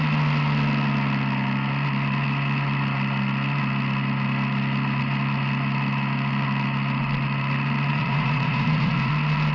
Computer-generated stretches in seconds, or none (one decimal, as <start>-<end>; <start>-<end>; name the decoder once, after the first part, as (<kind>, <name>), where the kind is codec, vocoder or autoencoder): 7.9-9.1 (vocoder, Vocos)